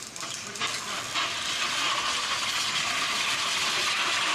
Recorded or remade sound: recorded